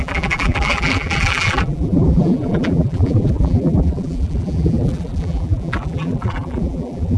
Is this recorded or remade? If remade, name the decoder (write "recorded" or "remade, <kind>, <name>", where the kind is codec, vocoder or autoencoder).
remade, vocoder, BigVGAN v2